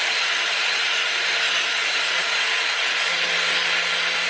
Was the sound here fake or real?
real